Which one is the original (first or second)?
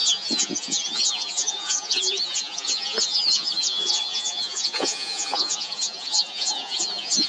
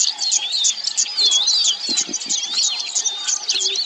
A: second